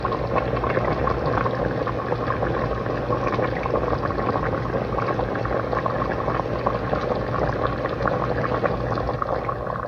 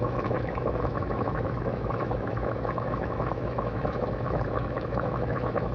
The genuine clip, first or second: first